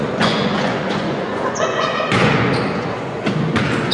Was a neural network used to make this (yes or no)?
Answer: yes